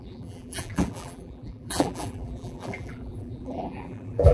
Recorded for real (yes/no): no